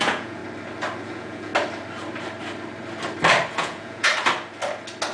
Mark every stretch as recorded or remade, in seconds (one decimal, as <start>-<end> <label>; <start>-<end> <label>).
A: 0.0-0.4 remade; 0.4-1.0 recorded; 1.0-1.5 remade; 1.5-3.5 recorded; 3.5-4.1 remade; 4.1-5.1 recorded